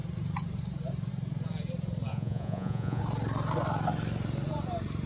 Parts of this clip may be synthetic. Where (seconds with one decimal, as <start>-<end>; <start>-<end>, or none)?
2.1-3.0